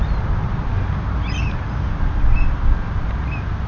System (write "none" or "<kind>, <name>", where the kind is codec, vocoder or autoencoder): none